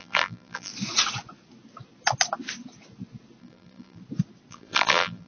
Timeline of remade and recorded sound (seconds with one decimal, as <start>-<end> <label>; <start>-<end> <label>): 0.0-0.7 remade; 0.7-3.4 recorded; 3.4-4.0 remade; 4.0-4.5 recorded; 4.5-5.3 remade